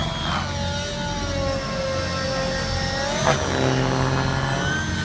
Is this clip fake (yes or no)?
no